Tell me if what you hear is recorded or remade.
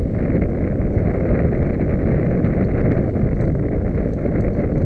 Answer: recorded